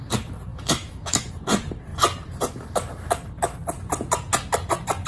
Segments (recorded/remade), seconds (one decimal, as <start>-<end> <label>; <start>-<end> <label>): 0.0-0.5 recorded; 0.5-1.3 remade; 1.3-5.1 recorded